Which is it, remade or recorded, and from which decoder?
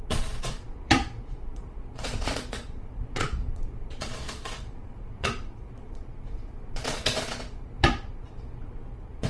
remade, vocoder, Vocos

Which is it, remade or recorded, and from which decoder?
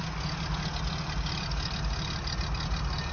recorded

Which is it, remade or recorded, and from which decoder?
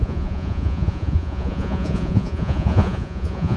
remade, vocoder, Vocos